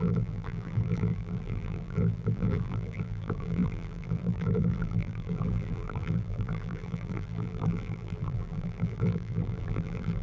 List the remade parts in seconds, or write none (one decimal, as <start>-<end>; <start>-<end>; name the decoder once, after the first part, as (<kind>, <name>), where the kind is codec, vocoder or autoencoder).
0.0-10.2 (vocoder, BigVGAN v2)